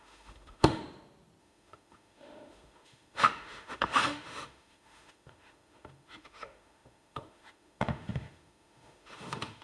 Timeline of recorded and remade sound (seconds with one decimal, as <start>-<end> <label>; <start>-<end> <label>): 0.0-0.8 remade; 0.8-1.4 recorded; 1.4-9.6 remade